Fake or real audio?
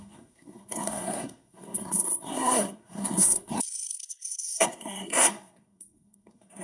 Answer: fake